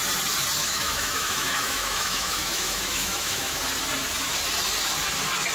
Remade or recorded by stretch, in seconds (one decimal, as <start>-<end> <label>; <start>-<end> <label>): 0.0-0.6 recorded; 0.6-3.6 remade; 3.6-5.5 recorded